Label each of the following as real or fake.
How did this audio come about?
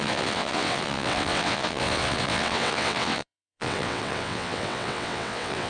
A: fake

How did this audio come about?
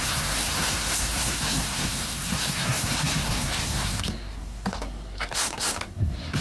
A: fake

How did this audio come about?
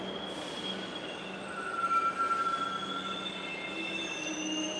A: real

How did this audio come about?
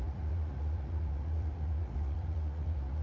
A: fake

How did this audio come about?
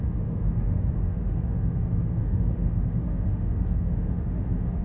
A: fake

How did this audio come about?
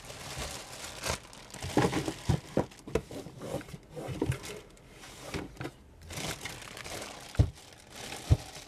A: real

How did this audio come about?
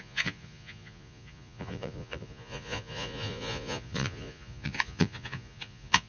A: fake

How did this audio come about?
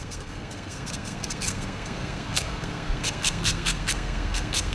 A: fake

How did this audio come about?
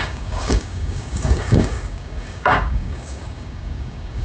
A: fake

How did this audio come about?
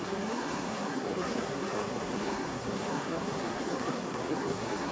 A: fake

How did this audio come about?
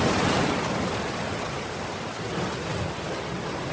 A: real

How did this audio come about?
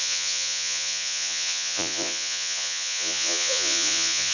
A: fake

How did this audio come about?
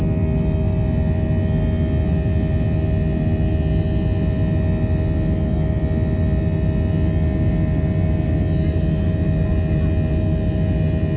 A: real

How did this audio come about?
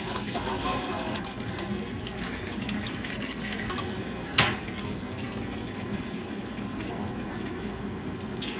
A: fake